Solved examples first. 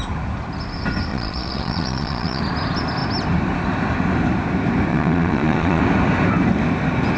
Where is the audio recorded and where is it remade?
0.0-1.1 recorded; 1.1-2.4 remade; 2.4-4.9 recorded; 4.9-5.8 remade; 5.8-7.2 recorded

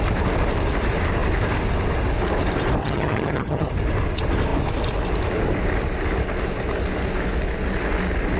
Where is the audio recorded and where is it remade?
0.0-2.8 recorded; 2.8-3.7 remade; 3.7-8.4 recorded